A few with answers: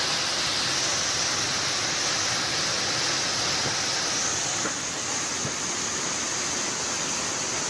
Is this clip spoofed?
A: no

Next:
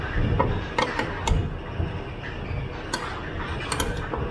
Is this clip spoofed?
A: no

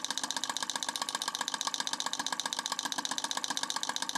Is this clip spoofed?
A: no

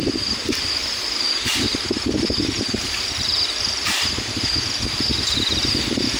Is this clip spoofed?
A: yes